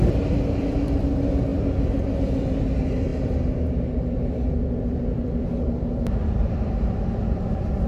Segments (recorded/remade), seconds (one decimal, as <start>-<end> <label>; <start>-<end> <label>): 0.0-7.9 recorded